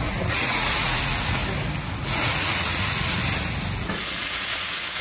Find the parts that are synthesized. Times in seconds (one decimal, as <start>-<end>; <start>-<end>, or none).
0.0-1.4; 2.0-3.2; 3.8-5.0